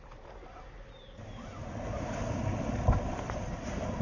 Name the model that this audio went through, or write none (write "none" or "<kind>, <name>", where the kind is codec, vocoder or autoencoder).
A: none